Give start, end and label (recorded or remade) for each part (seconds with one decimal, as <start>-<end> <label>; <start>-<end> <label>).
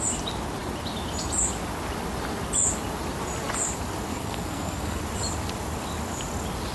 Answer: 0.0-4.1 recorded; 4.1-5.0 remade; 5.0-6.7 recorded